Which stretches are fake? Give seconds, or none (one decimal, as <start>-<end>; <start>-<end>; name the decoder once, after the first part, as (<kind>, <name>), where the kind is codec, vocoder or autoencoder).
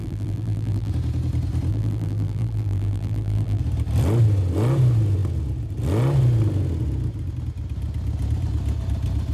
0.0-0.9 (vocoder, BigVGAN v2); 1.7-3.6